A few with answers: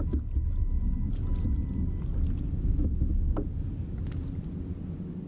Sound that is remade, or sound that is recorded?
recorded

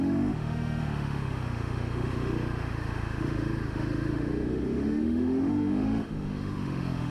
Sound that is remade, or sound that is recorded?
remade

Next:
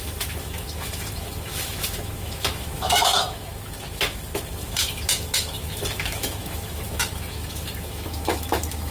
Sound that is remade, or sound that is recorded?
remade